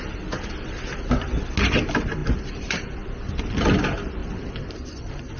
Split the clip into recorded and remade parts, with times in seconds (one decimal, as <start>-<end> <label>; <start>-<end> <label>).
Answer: 0.0-2.2 recorded; 2.2-2.8 remade; 2.8-4.2 recorded; 4.2-5.4 remade